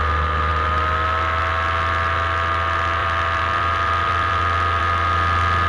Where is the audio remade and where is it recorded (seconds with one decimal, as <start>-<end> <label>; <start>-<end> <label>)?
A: 0.0-3.0 recorded; 3.0-4.8 remade; 4.8-5.7 recorded